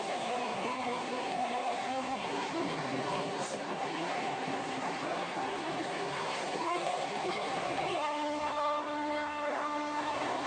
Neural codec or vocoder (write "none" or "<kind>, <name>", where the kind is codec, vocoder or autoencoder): codec, SNAC